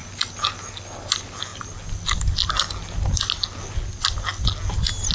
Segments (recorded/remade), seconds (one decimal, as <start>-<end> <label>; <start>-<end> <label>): 0.0-5.1 recorded